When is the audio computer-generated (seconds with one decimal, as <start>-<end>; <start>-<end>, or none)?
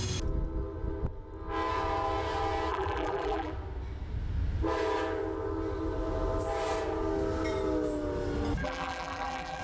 2.7-3.5; 8.6-9.6